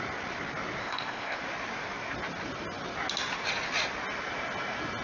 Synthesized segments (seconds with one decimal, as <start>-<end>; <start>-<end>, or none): 0.8-1.4

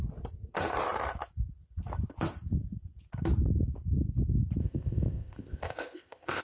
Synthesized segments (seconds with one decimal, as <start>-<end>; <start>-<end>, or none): 4.6-6.4

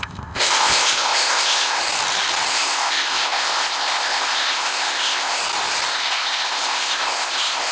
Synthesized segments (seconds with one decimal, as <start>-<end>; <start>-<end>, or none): 0.0-1.8; 2.5-5.4; 5.9-7.7

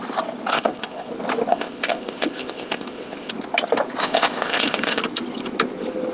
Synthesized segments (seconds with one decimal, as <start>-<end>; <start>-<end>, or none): 0.5-1.1; 1.5-3.3; 4.0-5.0

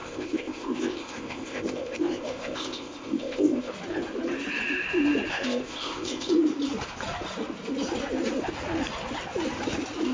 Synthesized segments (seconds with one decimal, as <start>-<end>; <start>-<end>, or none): 0.0-3.7; 5.3-6.3

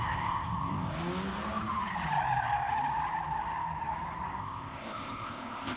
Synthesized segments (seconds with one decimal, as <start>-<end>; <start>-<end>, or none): 0.0-0.9; 4.4-5.8

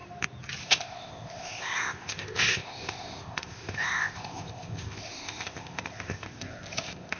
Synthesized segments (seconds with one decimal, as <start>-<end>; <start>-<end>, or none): 0.6-7.2